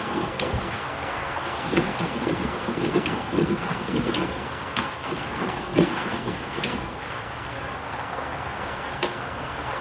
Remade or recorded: remade